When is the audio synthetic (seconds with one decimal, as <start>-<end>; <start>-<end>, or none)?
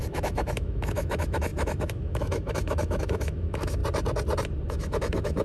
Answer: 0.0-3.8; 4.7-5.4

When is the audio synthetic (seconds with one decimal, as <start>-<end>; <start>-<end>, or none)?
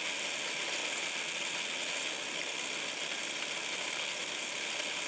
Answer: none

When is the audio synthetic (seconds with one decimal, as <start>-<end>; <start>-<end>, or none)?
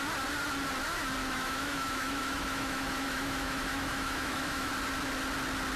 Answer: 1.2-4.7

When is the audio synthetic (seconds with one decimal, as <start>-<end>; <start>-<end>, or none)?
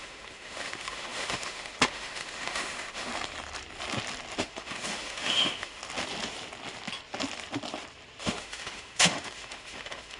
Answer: 0.0-3.1; 4.4-5.8; 8.2-10.2